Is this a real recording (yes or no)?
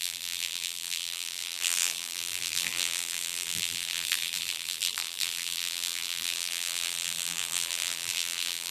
no